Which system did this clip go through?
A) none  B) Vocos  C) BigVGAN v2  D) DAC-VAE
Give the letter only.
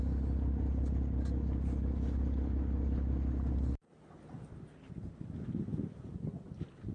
A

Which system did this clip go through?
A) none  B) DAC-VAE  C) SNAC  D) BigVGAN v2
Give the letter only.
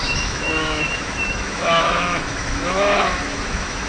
B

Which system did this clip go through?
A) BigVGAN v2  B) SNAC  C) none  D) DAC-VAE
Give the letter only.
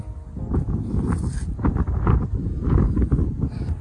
C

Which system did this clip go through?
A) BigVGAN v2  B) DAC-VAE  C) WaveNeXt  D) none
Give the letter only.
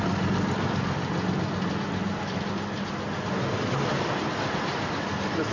D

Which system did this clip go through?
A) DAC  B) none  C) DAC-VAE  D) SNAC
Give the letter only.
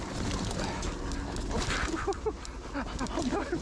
B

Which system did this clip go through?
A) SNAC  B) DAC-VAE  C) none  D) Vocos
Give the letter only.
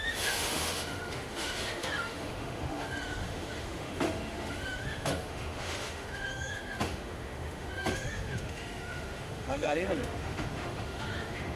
B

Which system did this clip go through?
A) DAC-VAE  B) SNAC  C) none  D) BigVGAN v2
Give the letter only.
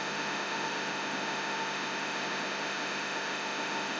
A